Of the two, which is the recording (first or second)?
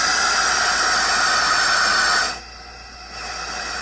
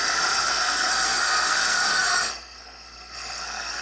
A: first